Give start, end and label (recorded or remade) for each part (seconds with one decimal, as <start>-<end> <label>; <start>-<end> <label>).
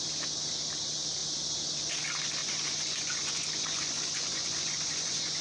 0.0-2.4 recorded; 2.4-5.4 remade